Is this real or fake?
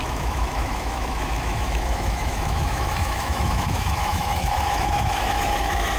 fake